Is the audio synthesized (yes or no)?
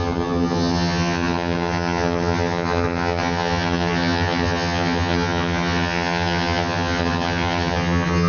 yes